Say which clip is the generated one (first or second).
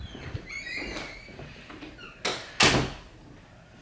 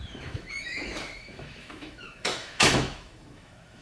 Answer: second